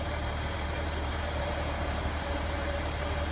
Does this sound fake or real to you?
fake